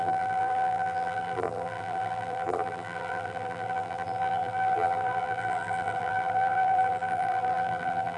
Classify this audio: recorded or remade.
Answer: remade